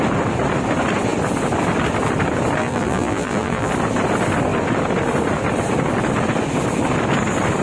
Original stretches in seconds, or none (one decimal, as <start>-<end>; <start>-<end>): 0.0-2.6; 3.7-7.6